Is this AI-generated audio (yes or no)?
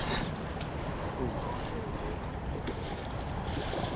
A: yes